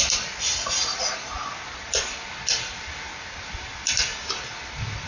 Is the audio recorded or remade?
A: recorded